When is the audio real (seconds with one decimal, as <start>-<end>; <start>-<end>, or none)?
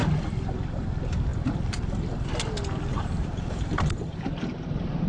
0.0-1.3; 2.3-2.9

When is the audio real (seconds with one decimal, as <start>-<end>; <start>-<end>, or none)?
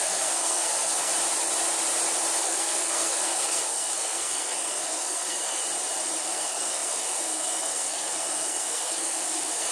1.1-2.4; 5.6-6.2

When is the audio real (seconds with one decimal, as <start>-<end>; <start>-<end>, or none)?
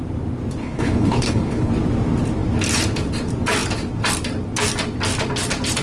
0.0-0.6; 1.7-5.8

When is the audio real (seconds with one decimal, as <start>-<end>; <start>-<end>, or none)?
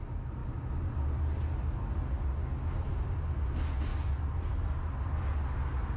0.0-6.0